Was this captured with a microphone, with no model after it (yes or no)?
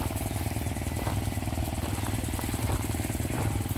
yes